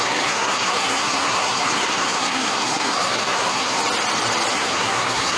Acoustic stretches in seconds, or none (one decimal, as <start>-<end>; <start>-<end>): 3.8-4.5